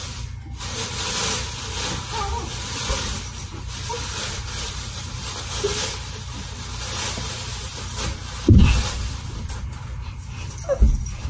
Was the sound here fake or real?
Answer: real